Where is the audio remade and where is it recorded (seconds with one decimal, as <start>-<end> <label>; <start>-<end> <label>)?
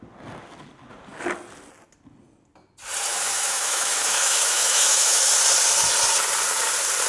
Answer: 0.0-3.1 recorded; 3.1-5.3 remade; 5.3-7.1 recorded